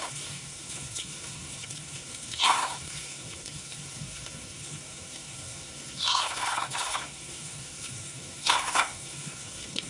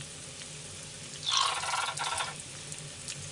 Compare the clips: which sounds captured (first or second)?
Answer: second